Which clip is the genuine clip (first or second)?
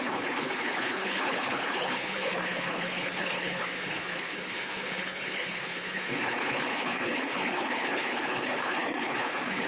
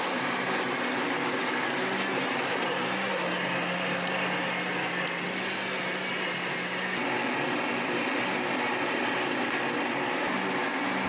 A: second